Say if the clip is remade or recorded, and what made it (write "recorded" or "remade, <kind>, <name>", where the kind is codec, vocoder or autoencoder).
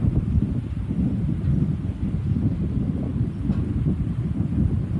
recorded